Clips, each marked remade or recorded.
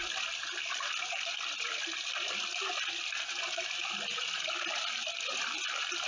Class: recorded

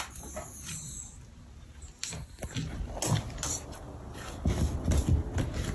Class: recorded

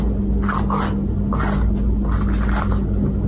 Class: recorded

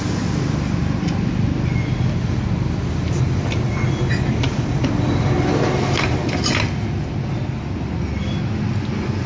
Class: recorded